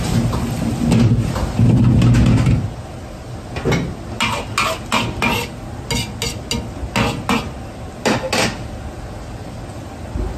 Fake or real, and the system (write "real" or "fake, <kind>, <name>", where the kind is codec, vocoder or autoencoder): real